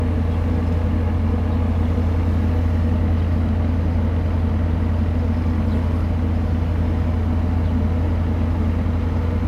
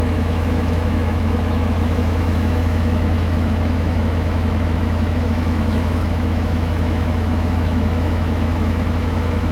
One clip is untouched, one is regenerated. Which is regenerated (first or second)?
second